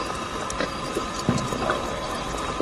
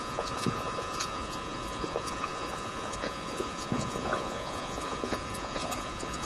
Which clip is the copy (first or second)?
second